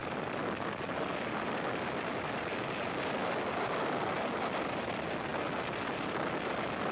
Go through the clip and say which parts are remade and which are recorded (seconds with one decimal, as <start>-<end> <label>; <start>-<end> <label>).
0.0-6.9 recorded